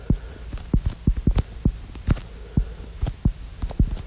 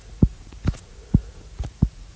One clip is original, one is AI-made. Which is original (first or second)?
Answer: first